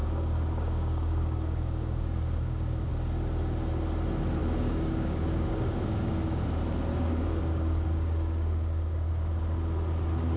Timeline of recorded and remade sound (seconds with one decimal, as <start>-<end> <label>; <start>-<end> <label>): 0.0-2.9 remade; 2.9-4.4 recorded; 4.4-6.1 remade; 6.1-6.9 recorded; 6.9-9.1 remade; 9.1-10.4 recorded